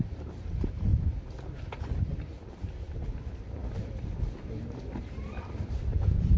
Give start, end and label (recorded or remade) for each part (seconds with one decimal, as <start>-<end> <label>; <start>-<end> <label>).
0.0-0.9 remade; 0.9-2.5 recorded; 2.5-6.4 remade